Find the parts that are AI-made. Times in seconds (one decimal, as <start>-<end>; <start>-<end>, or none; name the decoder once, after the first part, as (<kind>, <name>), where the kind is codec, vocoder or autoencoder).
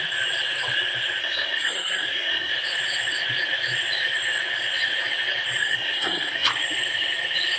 1.2-2.5 (codec, SNAC); 5.6-6.5